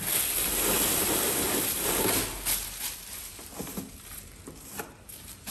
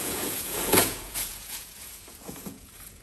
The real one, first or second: first